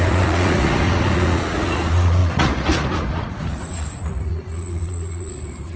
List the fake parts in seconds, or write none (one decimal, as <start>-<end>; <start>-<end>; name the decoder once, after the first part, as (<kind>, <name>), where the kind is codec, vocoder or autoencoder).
0.0-5.8 (vocoder, Vocos)